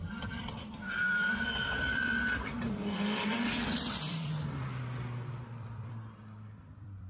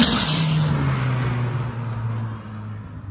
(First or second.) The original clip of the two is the second